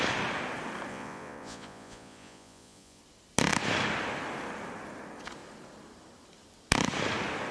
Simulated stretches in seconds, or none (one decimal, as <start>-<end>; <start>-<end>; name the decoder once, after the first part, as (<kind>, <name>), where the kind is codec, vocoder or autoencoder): 0.9-3.0 (vocoder, Vocos)